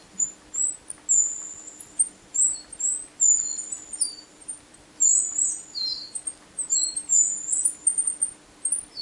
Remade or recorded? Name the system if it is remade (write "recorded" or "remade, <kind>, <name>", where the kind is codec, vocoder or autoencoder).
recorded